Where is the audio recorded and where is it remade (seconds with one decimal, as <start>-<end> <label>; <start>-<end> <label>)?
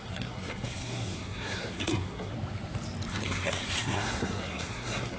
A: 0.0-2.3 remade; 2.3-3.1 recorded; 3.1-5.2 remade